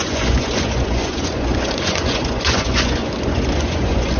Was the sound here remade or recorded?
remade